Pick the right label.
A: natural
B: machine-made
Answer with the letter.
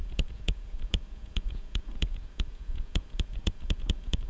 B